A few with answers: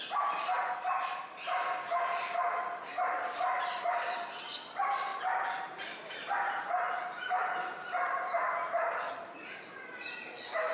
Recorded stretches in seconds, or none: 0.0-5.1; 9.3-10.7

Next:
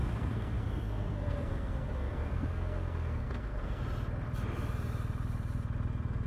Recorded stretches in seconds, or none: 3.8-6.3

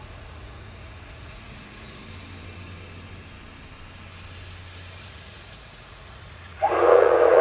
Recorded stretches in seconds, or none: 2.0-5.0